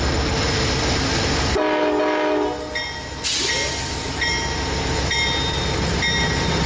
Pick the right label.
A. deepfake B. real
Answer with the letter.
B